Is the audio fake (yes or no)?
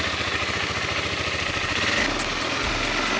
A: no